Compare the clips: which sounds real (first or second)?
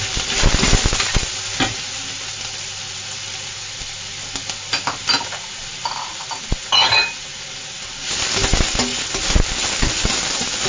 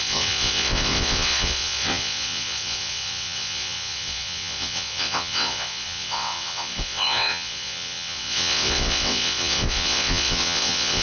first